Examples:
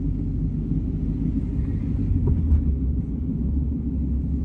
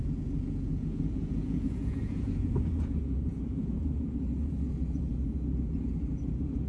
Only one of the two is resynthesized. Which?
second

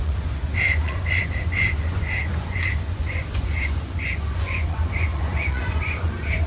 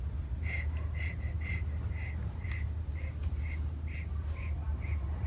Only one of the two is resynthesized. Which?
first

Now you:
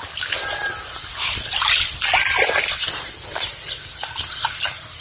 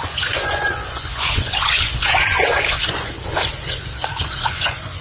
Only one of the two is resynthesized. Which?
second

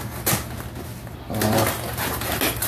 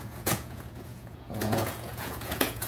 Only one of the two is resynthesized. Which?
second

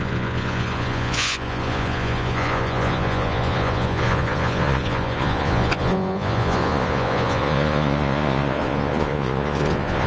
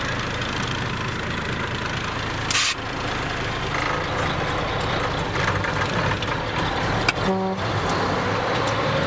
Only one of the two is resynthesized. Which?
first